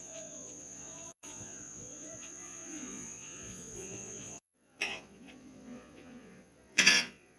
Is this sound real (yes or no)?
no